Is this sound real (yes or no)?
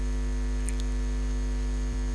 no